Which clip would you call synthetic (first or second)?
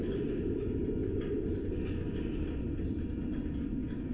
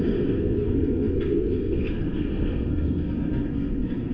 second